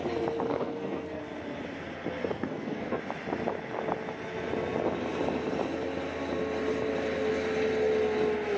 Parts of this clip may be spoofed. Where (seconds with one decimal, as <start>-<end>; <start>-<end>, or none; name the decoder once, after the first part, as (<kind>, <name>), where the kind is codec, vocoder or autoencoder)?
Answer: 0.5-1.2 (codec, SNAC); 2.2-3.0